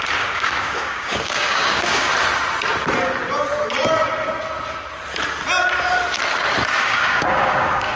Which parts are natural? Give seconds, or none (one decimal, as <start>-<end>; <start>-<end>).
2.1-6.8